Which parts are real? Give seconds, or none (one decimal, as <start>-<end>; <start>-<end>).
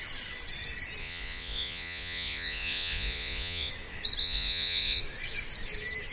0.0-1.0; 3.7-4.2; 5.0-6.1